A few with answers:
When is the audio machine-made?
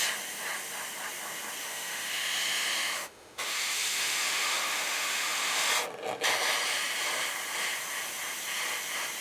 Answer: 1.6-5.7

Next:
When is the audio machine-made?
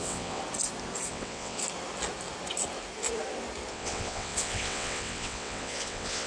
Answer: 0.0-0.4; 1.1-1.6; 3.7-6.3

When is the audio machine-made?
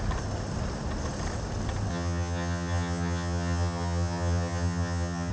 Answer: 1.9-5.3